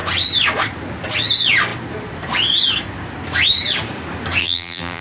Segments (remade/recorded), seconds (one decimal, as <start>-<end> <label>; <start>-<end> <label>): 0.0-4.4 recorded; 4.4-5.0 remade